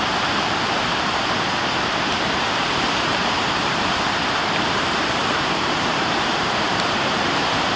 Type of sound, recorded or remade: remade